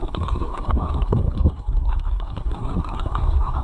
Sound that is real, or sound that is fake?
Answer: fake